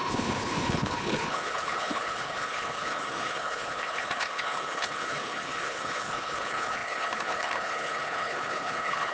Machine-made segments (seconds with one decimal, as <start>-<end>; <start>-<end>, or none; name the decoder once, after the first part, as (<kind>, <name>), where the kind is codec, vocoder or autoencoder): 0.0-9.1 (codec, HILCodec)